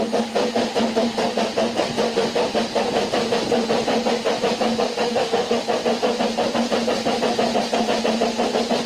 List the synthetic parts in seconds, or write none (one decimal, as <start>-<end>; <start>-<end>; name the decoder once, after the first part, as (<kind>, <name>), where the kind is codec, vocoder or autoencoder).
5.0-5.6 (autoencoder, DAC-VAE)